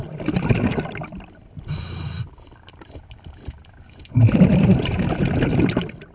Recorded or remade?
recorded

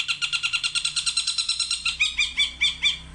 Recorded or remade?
recorded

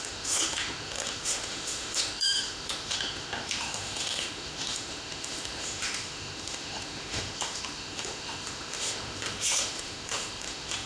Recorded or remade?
remade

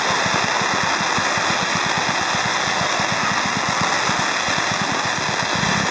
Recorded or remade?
recorded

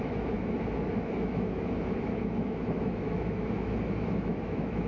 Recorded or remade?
remade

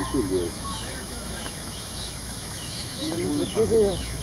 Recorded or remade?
remade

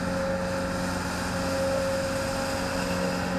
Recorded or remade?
recorded